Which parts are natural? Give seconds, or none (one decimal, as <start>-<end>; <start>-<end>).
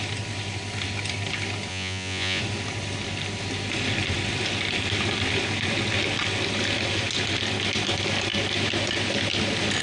0.0-1.7; 2.4-9.8